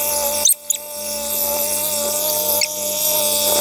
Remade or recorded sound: recorded